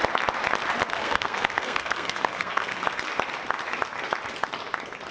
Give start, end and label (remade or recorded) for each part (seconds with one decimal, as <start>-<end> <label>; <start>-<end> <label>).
0.0-0.9 recorded; 0.9-2.8 remade; 2.8-5.1 recorded